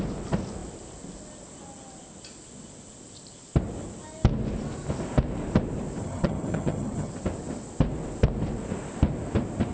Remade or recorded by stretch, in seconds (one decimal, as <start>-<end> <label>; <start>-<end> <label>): 0.0-6.0 recorded; 6.0-7.1 remade; 7.1-9.7 recorded